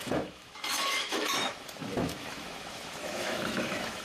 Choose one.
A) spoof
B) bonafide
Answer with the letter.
A